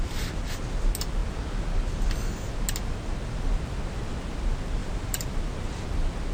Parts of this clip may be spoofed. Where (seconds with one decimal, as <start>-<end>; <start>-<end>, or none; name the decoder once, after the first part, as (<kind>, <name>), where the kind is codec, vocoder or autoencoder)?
4.8-5.4 (vocoder, BigVGAN v2)